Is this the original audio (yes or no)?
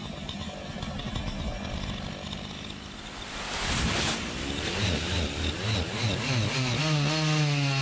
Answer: yes